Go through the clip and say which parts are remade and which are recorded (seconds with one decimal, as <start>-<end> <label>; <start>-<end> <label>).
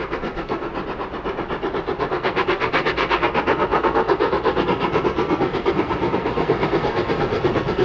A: 0.0-0.7 remade; 0.7-2.0 recorded; 2.0-7.8 remade